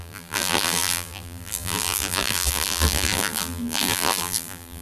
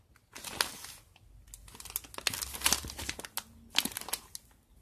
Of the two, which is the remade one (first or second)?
first